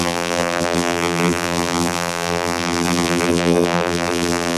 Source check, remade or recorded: remade